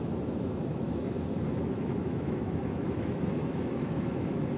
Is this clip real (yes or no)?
no